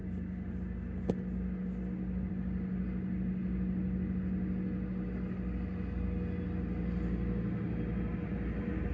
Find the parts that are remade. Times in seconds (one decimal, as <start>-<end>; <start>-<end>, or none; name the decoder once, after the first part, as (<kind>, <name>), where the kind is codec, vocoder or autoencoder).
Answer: none